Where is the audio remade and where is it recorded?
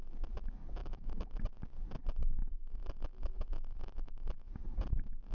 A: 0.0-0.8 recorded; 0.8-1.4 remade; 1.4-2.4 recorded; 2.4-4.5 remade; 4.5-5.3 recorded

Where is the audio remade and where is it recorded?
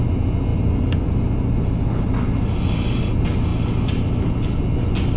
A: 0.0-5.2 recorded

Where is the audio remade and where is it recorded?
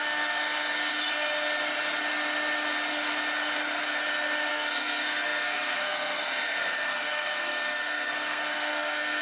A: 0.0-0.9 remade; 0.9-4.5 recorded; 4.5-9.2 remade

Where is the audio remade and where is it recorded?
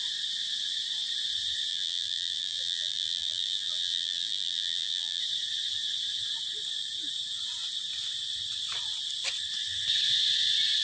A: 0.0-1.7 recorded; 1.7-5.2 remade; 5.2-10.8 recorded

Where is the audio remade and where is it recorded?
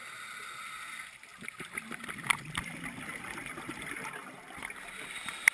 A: 0.0-0.9 recorded; 0.9-5.5 remade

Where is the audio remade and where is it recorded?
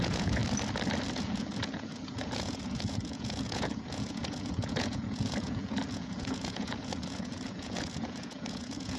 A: 0.0-0.4 remade; 0.4-1.1 recorded; 1.1-9.0 remade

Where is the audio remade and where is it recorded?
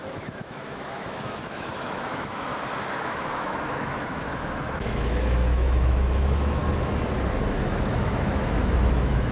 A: 0.0-2.5 remade; 2.5-3.0 recorded; 3.0-6.6 remade; 6.6-7.5 recorded; 7.5-9.3 remade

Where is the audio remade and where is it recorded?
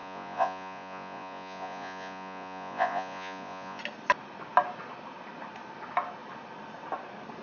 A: 0.0-3.8 remade; 3.8-7.4 recorded